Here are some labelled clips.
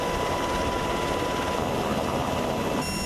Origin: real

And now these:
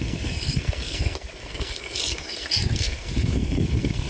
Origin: fake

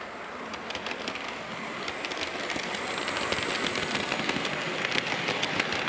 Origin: real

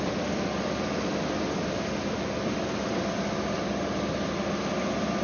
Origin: real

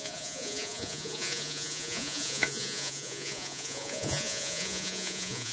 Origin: fake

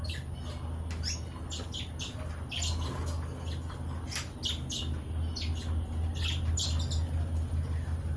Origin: real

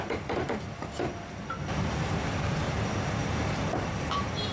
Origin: fake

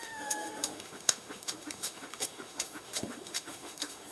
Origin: fake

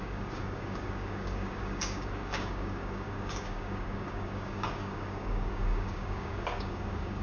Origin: fake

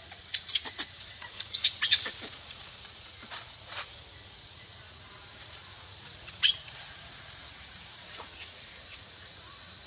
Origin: fake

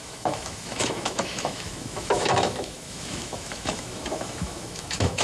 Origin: fake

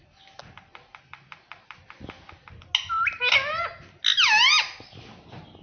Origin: real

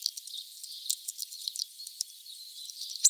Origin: real